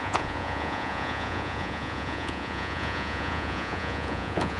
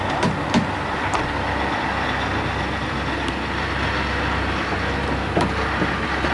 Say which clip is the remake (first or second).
first